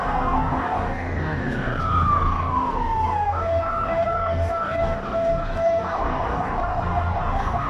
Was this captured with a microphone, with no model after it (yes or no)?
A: no